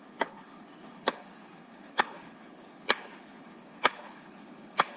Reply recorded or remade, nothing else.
remade